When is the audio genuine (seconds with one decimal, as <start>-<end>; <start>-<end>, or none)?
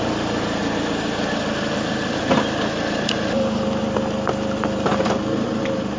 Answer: 0.6-1.3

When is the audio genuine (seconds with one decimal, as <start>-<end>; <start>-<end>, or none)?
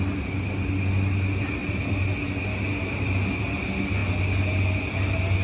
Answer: 0.0-5.4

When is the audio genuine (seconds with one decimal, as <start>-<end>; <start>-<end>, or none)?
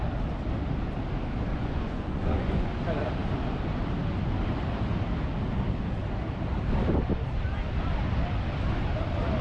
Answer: 0.0-1.5; 2.7-9.4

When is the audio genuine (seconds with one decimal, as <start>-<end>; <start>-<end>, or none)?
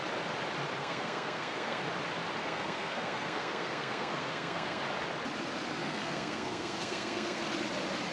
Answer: 0.0-0.8; 1.8-2.4; 4.8-5.8; 7.4-8.1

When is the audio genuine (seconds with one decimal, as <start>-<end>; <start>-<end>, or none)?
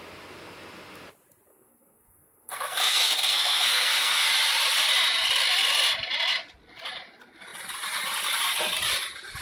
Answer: 0.0-1.5; 4.3-9.4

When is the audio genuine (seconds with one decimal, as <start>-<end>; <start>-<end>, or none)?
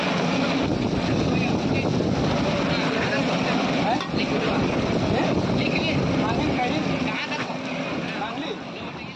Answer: 0.0-9.2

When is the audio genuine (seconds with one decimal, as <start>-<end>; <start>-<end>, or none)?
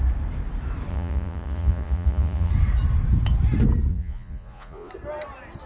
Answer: 0.0-0.9; 2.5-3.9; 4.9-5.7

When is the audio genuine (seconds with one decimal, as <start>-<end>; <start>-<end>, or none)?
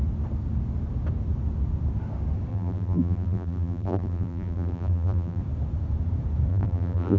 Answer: 0.0-2.5; 5.4-6.5